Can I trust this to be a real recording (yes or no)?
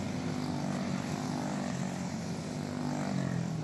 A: yes